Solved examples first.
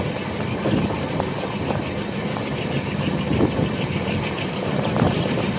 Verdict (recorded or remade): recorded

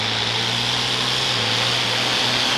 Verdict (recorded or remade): recorded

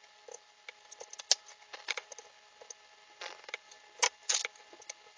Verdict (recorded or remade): recorded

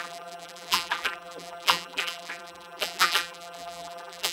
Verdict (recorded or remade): remade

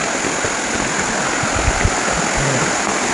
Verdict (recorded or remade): recorded